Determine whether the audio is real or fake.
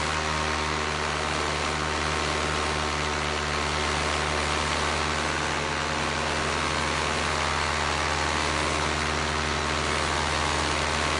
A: real